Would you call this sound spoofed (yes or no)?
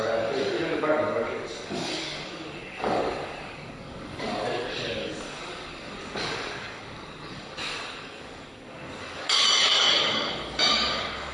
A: yes